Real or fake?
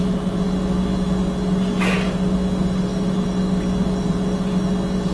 real